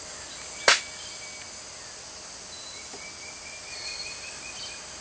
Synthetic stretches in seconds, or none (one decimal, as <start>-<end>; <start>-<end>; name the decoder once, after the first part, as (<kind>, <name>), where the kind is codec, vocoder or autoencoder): none